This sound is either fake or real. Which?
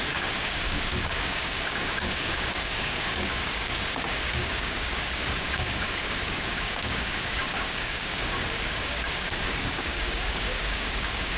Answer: fake